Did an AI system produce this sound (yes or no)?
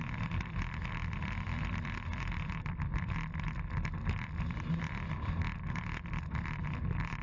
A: yes